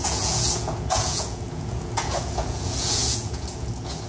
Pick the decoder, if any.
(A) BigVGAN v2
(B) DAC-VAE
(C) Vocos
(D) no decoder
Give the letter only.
C